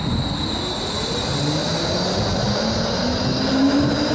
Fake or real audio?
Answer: real